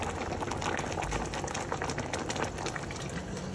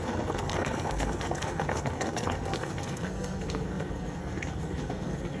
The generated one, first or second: second